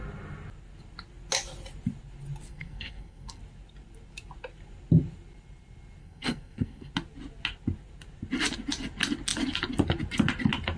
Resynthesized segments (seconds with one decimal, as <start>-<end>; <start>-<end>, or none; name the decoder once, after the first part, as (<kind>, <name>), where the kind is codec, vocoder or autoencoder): 2.5-3.4 (codec, SNAC); 6.0-6.9